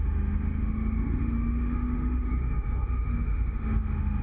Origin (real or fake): fake